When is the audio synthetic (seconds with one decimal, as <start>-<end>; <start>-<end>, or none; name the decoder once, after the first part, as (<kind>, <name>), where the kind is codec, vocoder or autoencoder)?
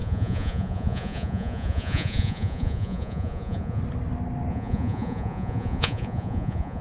0.0-3.8 (vocoder, Vocos); 4.5-6.8